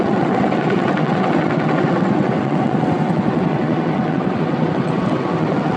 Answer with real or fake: fake